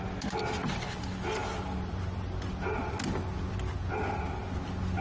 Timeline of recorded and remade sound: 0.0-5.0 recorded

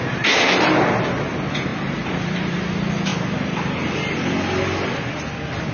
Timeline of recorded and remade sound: 0.0-1.7 recorded; 1.7-2.6 remade; 2.6-5.7 recorded

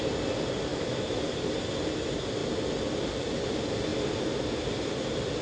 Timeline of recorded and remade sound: 0.0-0.7 recorded; 0.7-1.4 remade; 1.4-5.4 recorded

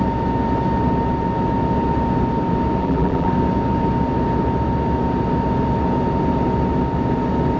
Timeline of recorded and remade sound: 0.0-2.8 recorded; 2.8-3.3 remade; 3.3-7.6 recorded

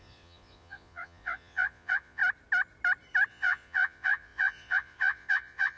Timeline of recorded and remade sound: 0.0-2.2 remade; 2.2-3.3 recorded; 3.3-5.8 remade

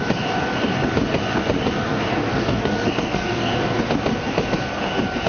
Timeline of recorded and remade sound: 0.0-2.1 recorded; 2.1-3.5 remade; 3.5-5.3 recorded

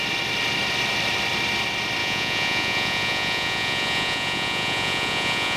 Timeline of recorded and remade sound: 0.0-2.0 recorded; 2.0-5.6 remade

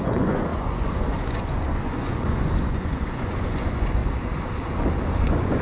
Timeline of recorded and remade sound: 0.0-4.0 remade; 4.0-5.1 recorded; 5.1-5.6 remade